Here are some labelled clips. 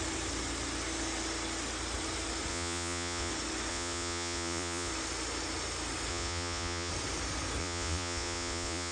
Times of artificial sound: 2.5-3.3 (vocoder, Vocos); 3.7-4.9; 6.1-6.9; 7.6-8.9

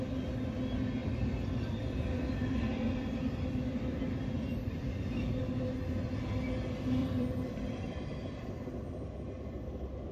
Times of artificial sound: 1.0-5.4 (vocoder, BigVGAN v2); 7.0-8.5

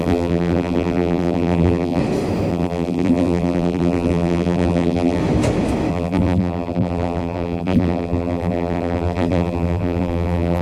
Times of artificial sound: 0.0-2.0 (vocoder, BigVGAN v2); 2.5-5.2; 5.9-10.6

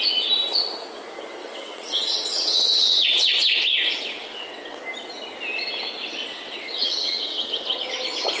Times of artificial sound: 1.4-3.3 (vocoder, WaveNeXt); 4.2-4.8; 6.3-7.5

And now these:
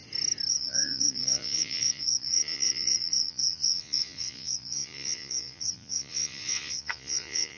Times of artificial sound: 0.5-7.6 (vocoder, Vocos)